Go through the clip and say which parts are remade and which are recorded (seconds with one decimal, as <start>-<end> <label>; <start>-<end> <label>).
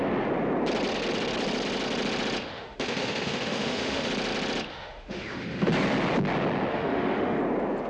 0.0-2.4 recorded; 2.4-4.1 remade; 4.1-4.7 recorded; 4.7-5.7 remade; 5.7-6.7 recorded; 6.7-7.4 remade; 7.4-7.9 recorded